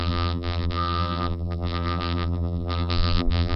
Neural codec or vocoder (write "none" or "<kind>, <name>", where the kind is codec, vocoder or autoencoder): vocoder, BigVGAN v2